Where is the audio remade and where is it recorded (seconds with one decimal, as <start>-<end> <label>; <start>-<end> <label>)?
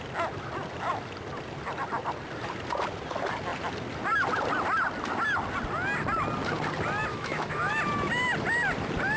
0.0-7.1 recorded; 7.1-7.7 remade; 7.7-9.2 recorded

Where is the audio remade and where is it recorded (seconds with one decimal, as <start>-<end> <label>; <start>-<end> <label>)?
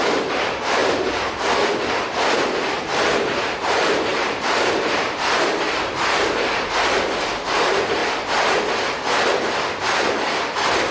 0.0-0.8 remade; 0.8-1.9 recorded; 1.9-8.0 remade; 8.0-10.0 recorded; 10.0-10.9 remade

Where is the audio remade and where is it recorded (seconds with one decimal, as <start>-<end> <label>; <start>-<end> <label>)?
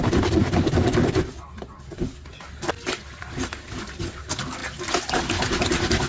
0.0-6.1 recorded